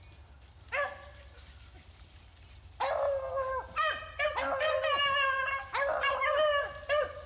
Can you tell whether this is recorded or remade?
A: recorded